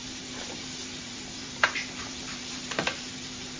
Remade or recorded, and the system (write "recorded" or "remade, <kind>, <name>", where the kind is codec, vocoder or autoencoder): remade, vocoder, BigVGAN v2